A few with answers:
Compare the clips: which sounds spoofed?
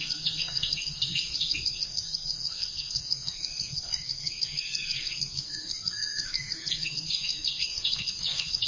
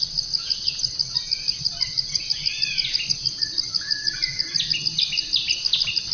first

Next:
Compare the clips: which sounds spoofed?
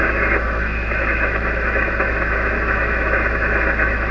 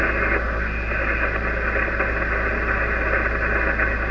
first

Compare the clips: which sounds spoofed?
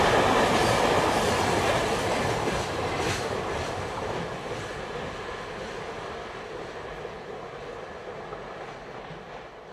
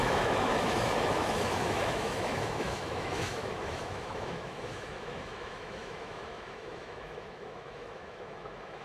second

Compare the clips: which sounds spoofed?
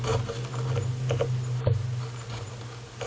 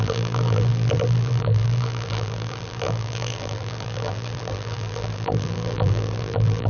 second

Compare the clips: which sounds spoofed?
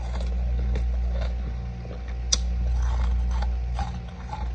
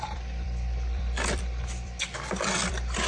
second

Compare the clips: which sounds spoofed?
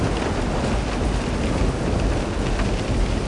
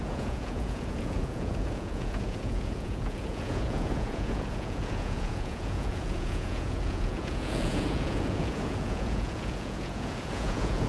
second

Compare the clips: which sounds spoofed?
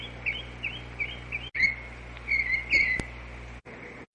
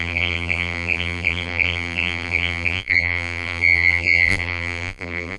second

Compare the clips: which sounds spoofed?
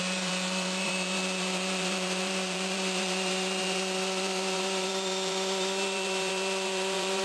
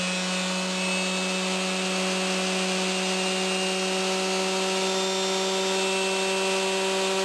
first